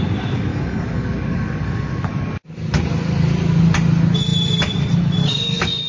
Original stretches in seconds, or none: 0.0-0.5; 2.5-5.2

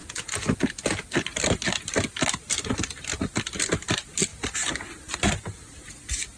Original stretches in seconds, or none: 0.0-6.4

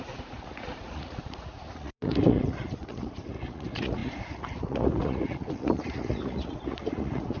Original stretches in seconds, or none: none

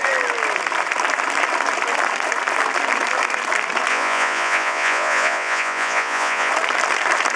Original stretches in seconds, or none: 0.0-3.9; 6.5-7.4